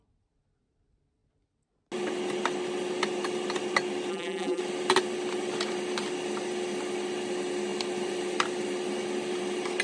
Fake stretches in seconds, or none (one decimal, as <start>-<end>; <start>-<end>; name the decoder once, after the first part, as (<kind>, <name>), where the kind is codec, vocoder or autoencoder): 4.1-4.6 (vocoder, BigVGAN v2)